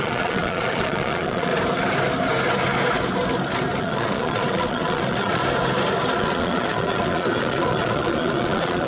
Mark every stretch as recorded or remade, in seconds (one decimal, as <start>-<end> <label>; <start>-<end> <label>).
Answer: 0.0-1.5 remade; 1.5-3.8 recorded; 3.8-5.4 remade; 5.4-6.2 recorded; 6.2-8.9 remade